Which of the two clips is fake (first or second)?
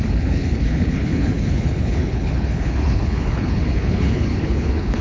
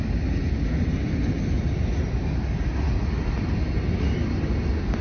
first